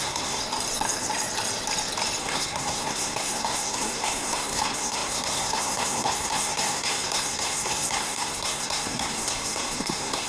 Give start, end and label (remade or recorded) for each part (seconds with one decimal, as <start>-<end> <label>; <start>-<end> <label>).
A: 0.0-0.4 remade; 0.4-2.2 recorded; 2.2-10.3 remade